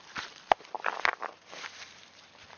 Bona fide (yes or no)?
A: yes